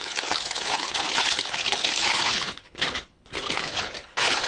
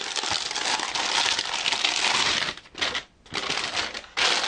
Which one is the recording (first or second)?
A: second